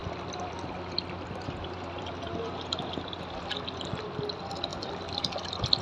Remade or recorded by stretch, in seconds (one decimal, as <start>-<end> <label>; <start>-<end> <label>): 0.0-3.5 remade; 3.5-5.8 recorded

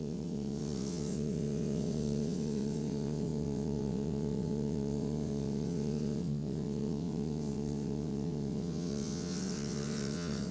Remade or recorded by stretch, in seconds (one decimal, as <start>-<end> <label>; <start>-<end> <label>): 0.0-10.5 remade

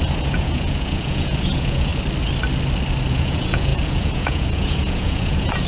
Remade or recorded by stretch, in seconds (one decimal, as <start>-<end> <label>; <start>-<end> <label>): 0.0-1.9 remade; 1.9-3.1 recorded; 3.1-5.7 remade

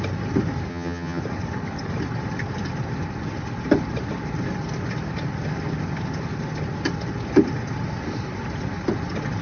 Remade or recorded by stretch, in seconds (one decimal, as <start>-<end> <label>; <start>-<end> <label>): 0.0-0.7 recorded; 0.7-1.2 remade; 1.2-9.4 recorded

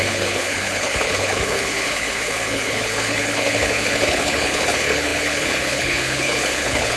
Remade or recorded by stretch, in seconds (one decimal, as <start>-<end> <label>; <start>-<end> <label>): 0.0-7.0 remade